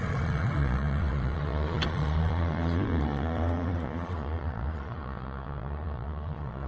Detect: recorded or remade remade